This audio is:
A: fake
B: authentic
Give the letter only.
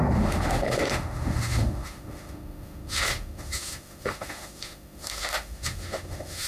A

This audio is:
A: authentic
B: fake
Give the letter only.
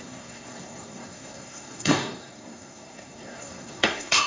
B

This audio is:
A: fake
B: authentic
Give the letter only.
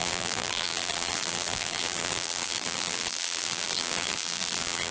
A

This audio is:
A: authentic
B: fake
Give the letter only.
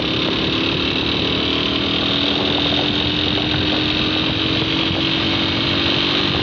A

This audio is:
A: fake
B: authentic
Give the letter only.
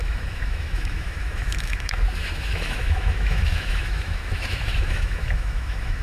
A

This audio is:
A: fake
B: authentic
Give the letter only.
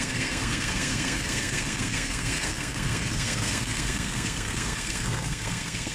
A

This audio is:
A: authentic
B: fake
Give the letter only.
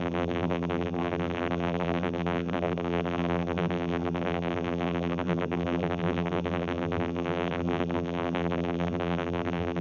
B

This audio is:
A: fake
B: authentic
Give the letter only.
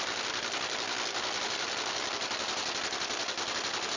B